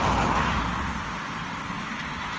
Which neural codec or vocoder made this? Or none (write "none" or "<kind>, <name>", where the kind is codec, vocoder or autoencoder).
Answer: none